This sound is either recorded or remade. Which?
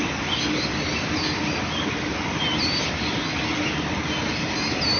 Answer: recorded